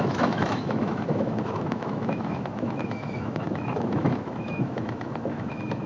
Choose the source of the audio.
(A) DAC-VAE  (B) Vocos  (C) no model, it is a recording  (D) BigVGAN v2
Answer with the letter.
A